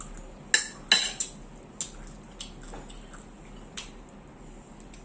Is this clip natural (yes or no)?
yes